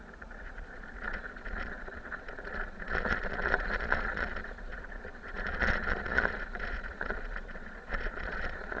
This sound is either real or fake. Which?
fake